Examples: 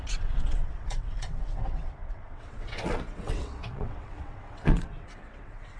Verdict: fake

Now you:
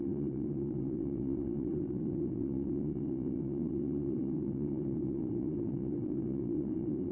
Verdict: fake